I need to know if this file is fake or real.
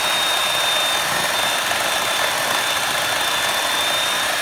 real